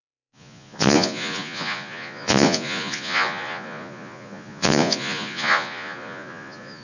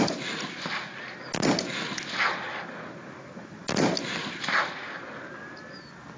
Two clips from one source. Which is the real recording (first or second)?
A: second